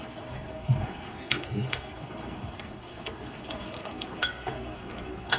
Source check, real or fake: fake